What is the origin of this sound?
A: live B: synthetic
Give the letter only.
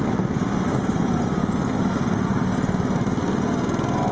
A